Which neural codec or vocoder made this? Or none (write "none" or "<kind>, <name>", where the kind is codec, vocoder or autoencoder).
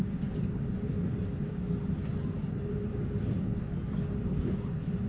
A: none